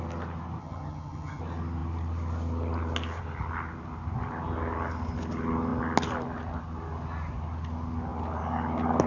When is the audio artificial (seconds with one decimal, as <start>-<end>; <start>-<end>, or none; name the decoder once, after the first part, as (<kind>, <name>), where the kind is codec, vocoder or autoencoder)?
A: 0.6-1.4 (vocoder, HiFi-GAN)